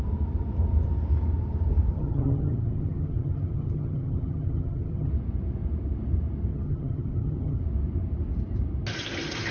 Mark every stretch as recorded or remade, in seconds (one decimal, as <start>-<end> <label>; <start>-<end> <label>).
0.0-1.9 recorded; 1.9-5.1 remade; 5.1-6.5 recorded; 6.5-7.6 remade; 7.6-9.5 recorded